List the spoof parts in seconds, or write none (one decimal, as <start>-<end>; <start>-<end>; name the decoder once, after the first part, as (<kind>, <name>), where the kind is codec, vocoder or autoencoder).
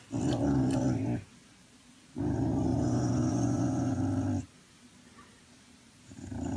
2.7-4.0 (vocoder, Vocos)